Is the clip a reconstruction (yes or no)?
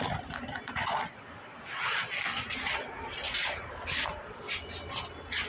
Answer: no